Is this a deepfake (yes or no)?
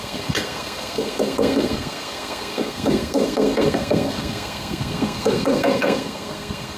yes